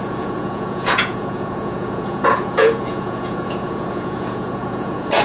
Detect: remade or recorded remade